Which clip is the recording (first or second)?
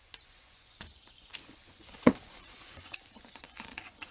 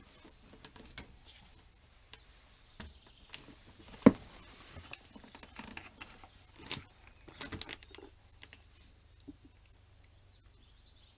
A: second